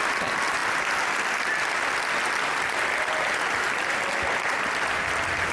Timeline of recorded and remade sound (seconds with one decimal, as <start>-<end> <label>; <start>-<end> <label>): 0.0-5.5 recorded